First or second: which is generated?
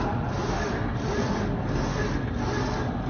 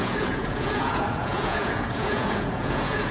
second